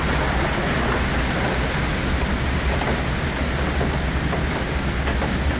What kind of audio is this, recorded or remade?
recorded